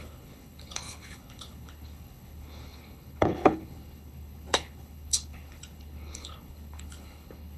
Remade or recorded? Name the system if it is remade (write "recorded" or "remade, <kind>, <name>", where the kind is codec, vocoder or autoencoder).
remade, codec, HILCodec